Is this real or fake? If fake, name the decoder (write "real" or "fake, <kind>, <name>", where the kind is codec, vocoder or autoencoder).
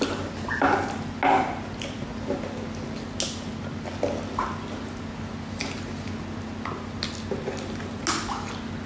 real